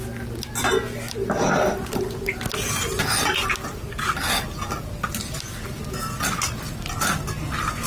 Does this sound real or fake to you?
real